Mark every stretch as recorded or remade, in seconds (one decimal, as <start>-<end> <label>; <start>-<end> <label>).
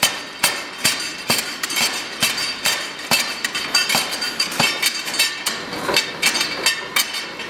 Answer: 0.0-1.1 recorded; 1.1-5.1 remade; 5.1-7.5 recorded